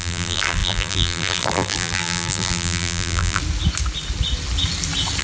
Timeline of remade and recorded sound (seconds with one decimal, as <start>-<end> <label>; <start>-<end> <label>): 0.0-3.4 remade; 3.4-5.2 recorded